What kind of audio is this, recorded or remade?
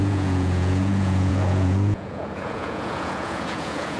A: remade